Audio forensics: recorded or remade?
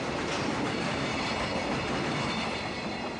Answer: remade